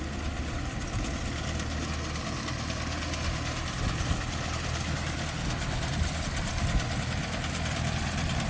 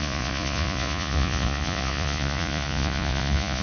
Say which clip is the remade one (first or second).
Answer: second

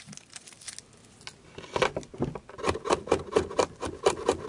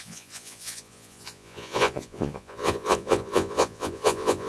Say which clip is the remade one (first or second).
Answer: second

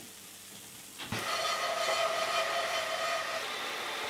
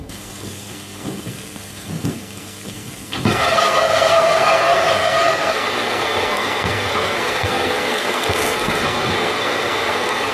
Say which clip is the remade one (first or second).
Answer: second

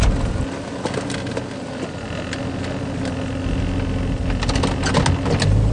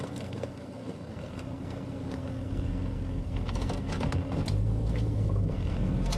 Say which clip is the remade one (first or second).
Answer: second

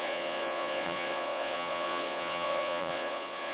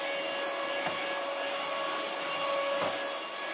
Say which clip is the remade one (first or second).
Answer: first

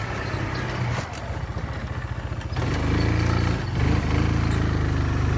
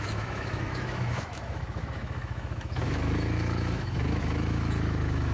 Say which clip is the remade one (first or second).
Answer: second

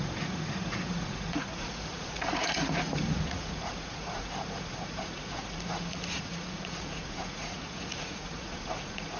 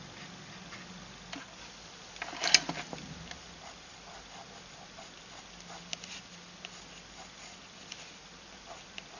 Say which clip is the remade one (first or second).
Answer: first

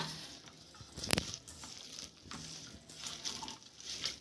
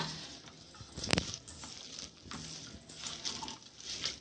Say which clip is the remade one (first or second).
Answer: first